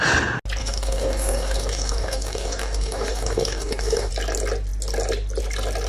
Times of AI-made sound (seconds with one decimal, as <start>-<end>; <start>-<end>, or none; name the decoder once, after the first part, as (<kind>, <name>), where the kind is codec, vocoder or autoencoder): 0.6-4.1 (codec, DAC)